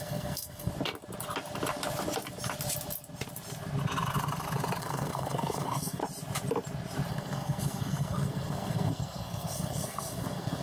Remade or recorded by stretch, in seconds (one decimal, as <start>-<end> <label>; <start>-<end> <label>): 0.0-0.7 remade; 0.7-4.8 recorded; 4.8-6.0 remade; 6.0-7.1 recorded; 7.1-10.6 remade